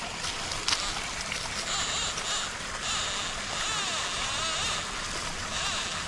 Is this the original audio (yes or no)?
yes